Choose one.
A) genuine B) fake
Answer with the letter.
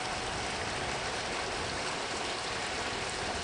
A